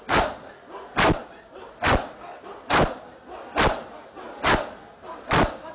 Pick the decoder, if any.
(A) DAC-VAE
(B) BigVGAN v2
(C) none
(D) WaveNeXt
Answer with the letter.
C